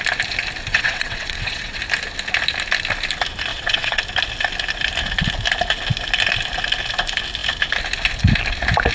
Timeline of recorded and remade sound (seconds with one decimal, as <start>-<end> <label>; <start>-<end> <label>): 0.0-0.7 recorded; 0.7-1.8 remade; 1.8-3.5 recorded; 3.5-4.0 remade; 4.0-8.9 recorded